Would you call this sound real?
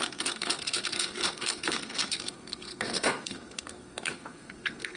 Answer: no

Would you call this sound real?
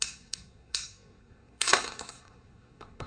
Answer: no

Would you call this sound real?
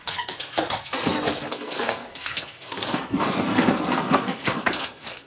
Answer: no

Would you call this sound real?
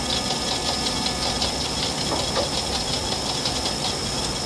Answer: yes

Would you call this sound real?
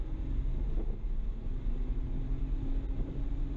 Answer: yes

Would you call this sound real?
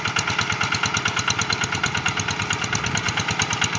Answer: yes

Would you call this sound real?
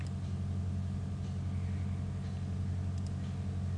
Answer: yes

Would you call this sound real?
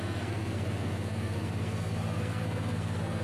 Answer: no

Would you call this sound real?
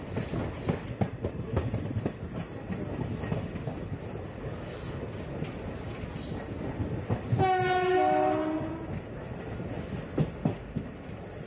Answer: yes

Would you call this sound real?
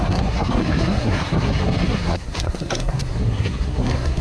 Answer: no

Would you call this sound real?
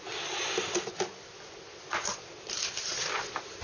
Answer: yes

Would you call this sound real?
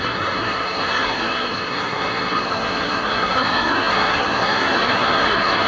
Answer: no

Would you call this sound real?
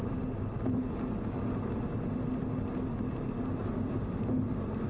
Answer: yes